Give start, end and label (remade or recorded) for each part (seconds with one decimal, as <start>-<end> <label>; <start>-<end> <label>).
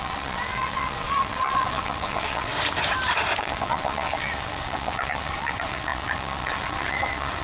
0.0-2.5 remade; 2.5-3.4 recorded; 3.4-7.4 remade